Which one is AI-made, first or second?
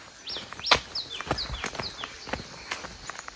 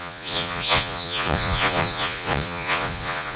second